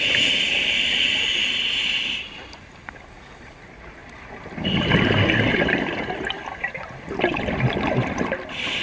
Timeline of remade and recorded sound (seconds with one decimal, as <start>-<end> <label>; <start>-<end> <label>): 0.0-8.8 recorded